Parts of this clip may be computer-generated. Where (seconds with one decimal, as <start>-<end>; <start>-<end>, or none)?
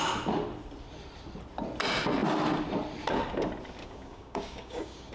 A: 3.8-5.1